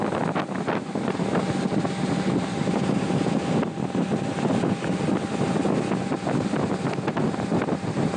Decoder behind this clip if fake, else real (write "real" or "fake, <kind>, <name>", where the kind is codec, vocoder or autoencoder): real